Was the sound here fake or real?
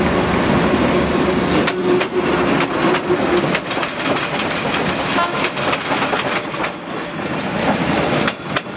real